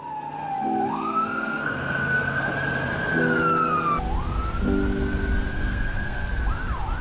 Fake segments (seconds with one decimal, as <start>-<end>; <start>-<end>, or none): 0.9-2.5; 5.5-6.3